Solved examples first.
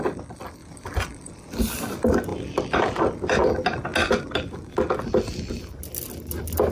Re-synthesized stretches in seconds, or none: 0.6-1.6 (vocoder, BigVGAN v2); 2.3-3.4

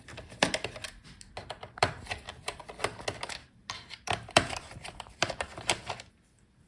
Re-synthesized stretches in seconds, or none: 1.4-2.6 (vocoder, BigVGAN v2); 3.4-6.1

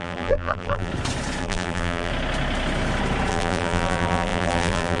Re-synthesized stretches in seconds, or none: 0.0-0.9 (vocoder, BigVGAN v2); 1.4-2.1; 3.3-5.0